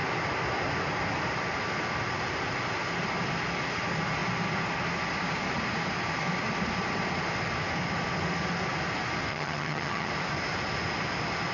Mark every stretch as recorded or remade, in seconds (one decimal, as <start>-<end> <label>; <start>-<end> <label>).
0.0-9.3 recorded; 9.3-10.1 remade; 10.1-11.5 recorded